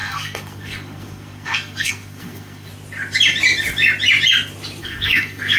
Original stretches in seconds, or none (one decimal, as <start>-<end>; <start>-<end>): 2.7-4.8